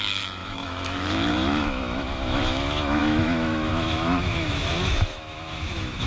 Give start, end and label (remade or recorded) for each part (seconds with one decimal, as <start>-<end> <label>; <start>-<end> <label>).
0.0-6.1 remade